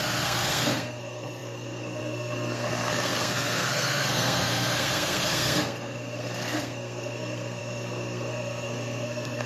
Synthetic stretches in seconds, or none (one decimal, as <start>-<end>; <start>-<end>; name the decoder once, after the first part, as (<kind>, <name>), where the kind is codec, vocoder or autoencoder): 0.0-9.5 (codec, SNAC)